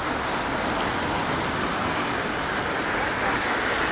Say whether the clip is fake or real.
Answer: real